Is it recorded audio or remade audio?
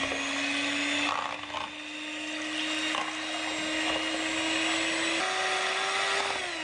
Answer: recorded